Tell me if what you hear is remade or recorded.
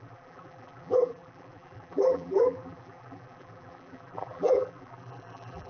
remade